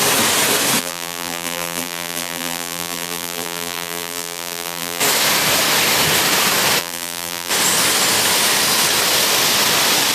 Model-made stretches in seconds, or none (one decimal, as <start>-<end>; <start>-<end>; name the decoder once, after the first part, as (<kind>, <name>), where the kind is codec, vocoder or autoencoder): 0.8-5.0 (vocoder, BigVGAN v2); 6.8-7.5